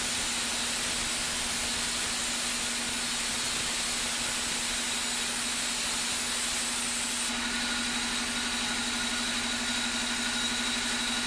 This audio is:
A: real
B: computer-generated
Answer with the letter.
A